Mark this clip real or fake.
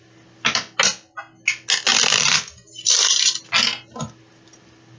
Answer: real